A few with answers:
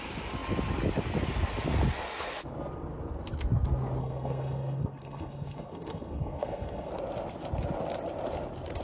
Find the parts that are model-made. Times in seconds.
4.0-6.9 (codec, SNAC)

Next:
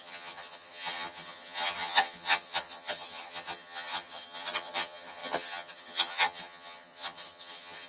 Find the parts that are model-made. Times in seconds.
0.0-7.9 (vocoder, HiFi-GAN)

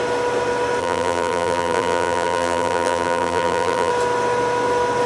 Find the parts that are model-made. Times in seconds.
0.8-3.9 (vocoder, BigVGAN v2)

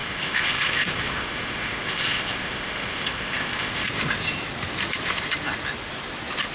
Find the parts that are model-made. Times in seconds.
0.0-3.9 (codec, ZipCodec)